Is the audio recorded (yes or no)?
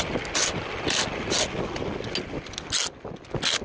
yes